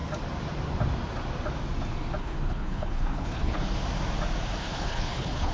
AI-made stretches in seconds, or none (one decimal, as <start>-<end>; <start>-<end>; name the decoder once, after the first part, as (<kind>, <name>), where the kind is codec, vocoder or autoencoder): 2.2-3.6 (codec, HILCodec); 4.6-5.5